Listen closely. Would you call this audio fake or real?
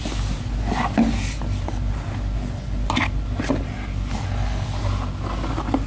real